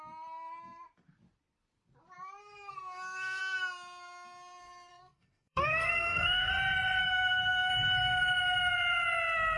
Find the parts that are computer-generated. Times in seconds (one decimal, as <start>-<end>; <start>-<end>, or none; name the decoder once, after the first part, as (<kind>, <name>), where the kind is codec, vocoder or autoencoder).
2.4-3.4 (codec, SNAC); 4.9-6.5; 7.0-7.7